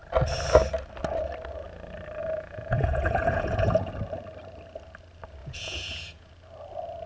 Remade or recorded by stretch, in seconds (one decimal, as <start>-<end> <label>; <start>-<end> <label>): 0.0-2.2 recorded; 2.2-3.9 remade; 3.9-5.4 recorded; 5.4-6.3 remade; 6.3-7.1 recorded